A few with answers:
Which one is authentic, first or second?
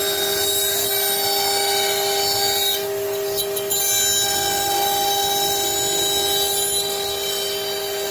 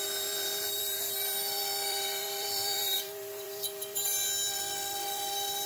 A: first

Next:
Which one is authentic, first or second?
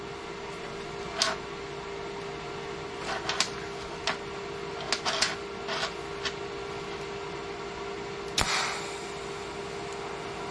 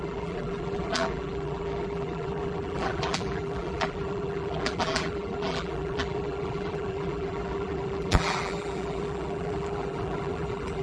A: first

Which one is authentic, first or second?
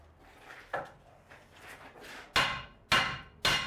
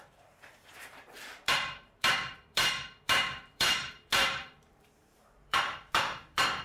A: first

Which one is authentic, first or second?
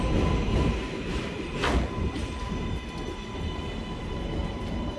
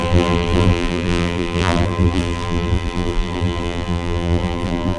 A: first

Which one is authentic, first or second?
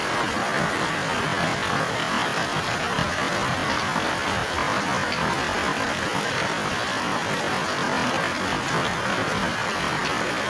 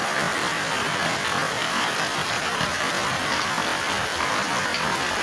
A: first